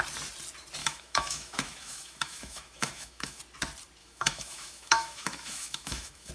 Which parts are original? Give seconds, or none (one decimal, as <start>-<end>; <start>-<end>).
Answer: 0.0-0.8; 3.4-4.0